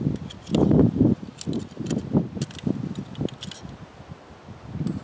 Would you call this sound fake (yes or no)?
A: no